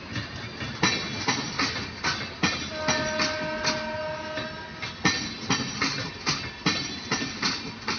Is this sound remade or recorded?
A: recorded